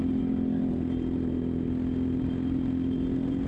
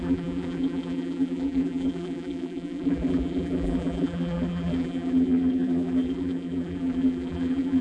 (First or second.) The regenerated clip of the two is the second